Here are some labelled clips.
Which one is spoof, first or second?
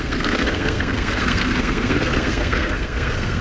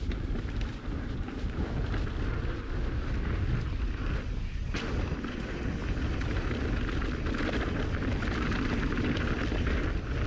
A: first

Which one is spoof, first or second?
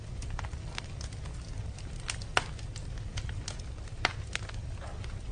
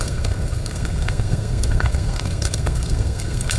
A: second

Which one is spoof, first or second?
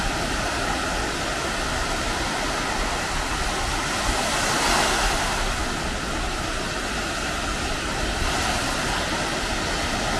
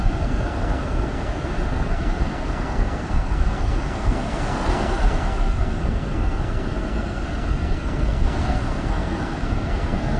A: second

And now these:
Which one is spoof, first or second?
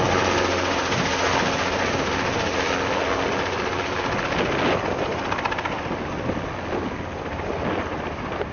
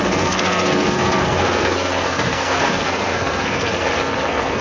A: second